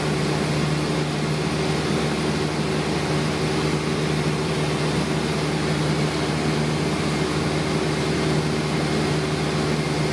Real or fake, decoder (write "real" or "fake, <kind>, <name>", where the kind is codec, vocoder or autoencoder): real